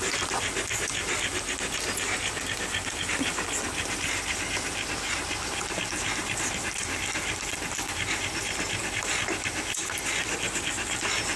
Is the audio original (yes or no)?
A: yes